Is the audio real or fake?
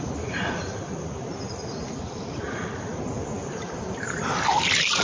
real